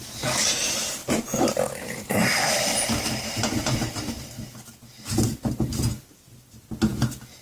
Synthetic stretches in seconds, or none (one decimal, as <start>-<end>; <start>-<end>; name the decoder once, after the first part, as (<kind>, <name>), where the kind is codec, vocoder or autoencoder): 1.0-5.4 (vocoder, BigVGAN v2)